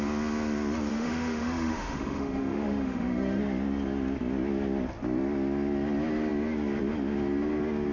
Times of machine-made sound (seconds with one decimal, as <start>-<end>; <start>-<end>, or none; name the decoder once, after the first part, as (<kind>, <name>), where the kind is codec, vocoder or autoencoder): 0.9-3.4 (autoencoder, DAC-VAE)